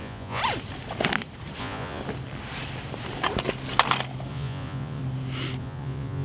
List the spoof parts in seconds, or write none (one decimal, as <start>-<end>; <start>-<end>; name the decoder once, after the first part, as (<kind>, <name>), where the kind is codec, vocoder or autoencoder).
0.0-0.4 (vocoder, Vocos); 1.6-2.0; 4.3-5.0; 5.6-6.2